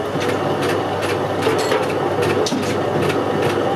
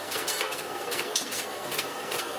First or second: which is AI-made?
second